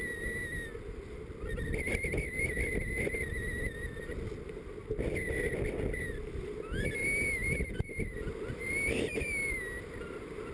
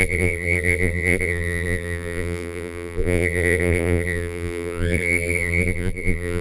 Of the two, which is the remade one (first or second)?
second